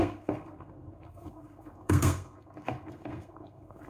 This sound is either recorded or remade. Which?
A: remade